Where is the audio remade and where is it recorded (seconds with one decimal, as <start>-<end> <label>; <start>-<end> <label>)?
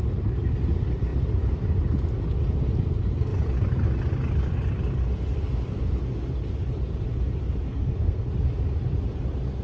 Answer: 0.0-7.7 recorded; 7.7-8.3 remade; 8.3-9.6 recorded